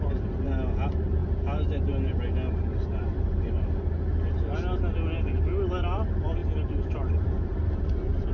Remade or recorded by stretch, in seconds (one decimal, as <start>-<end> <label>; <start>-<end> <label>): 0.0-8.3 recorded

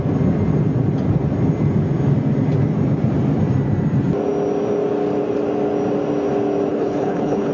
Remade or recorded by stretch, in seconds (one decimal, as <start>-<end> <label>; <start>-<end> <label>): 0.0-6.7 recorded; 6.7-7.5 remade

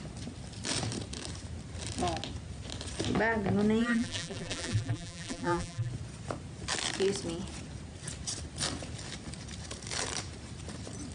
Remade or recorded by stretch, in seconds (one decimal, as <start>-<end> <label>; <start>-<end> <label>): 0.0-3.8 recorded; 3.8-5.9 remade; 5.9-11.1 recorded